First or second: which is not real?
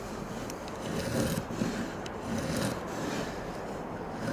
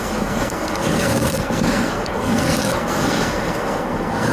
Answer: second